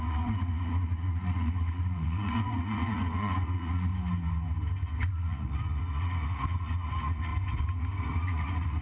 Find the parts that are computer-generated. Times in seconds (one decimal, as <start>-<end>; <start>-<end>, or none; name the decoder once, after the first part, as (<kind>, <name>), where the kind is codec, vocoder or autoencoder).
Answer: 0.0-3.9 (vocoder, Vocos); 5.1-7.3; 8.0-8.8